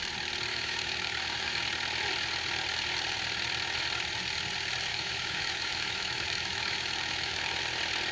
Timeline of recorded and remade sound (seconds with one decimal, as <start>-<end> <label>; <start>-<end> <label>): 0.0-0.5 recorded; 0.5-1.6 remade; 1.6-4.9 recorded; 4.9-7.6 remade; 7.6-8.1 recorded